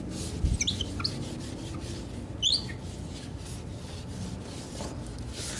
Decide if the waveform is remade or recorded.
recorded